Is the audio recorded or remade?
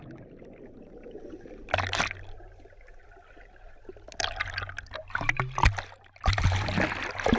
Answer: recorded